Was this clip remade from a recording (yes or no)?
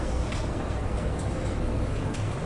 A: yes